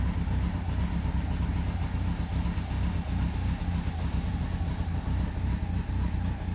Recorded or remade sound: recorded